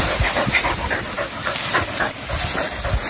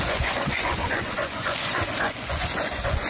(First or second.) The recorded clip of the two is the first